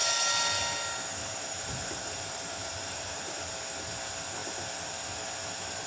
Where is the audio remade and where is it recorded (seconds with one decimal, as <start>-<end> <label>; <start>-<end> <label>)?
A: 0.0-1.2 recorded; 1.2-3.5 remade; 3.5-5.9 recorded

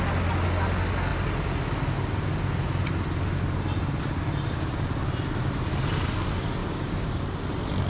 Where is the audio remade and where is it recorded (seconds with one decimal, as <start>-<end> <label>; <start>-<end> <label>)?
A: 0.0-6.6 recorded; 6.6-7.2 remade; 7.2-7.9 recorded

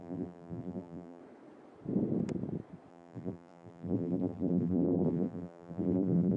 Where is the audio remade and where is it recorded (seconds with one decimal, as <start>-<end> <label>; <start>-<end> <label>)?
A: 0.0-1.2 remade; 1.2-2.9 recorded; 2.9-6.4 remade

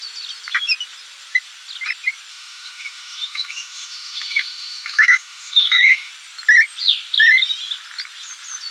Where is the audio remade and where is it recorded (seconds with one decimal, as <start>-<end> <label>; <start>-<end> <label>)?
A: 0.0-2.3 recorded; 2.3-6.1 remade; 6.1-8.7 recorded